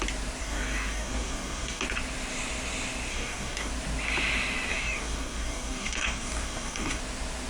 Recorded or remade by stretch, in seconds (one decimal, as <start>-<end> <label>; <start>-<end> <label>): 0.0-0.4 recorded; 0.4-1.8 remade; 1.8-3.1 recorded; 3.1-3.7 remade; 3.7-4.7 recorded; 4.7-7.0 remade; 7.0-7.5 recorded